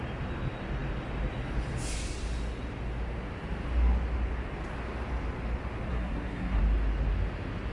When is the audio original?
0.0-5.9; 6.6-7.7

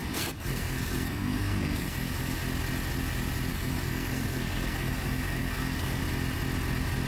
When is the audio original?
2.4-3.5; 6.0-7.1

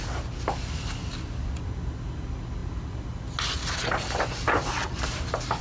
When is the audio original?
0.0-5.6